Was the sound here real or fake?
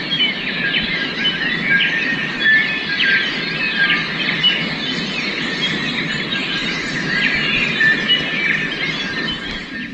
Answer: real